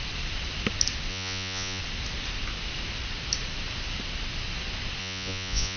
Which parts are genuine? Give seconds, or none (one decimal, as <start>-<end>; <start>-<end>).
0.0-1.1; 1.8-5.0